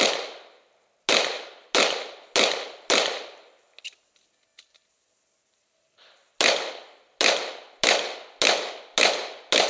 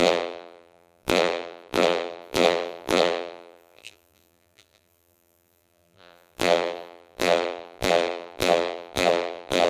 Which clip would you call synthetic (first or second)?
second